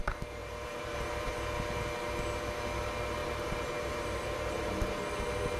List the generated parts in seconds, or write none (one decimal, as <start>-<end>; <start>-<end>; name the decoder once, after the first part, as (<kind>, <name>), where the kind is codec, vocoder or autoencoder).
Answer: 0.4-1.3 (vocoder, BigVGAN v2); 3.2-4.9